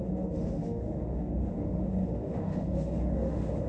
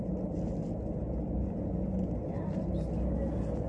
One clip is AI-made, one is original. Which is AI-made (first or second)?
first